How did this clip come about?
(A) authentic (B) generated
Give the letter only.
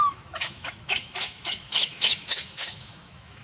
B